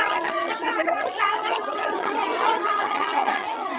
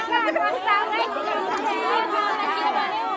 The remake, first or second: first